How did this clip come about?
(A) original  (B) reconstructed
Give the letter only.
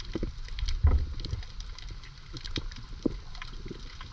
A